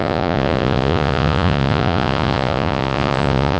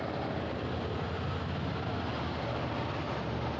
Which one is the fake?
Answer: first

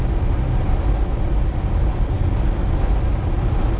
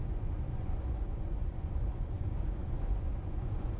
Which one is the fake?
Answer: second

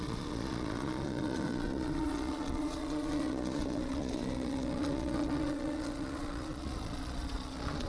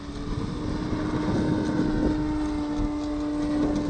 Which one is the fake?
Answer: first